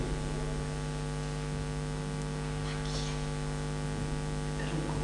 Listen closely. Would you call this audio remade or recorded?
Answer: recorded